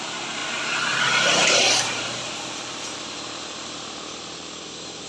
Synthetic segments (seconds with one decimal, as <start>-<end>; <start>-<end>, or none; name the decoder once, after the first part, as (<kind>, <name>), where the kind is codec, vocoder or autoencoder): 0.0-0.4 (vocoder, BigVGAN v2); 1.0-5.1